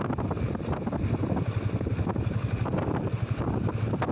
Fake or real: real